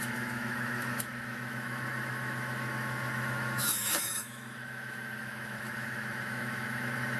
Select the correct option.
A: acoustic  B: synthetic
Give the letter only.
B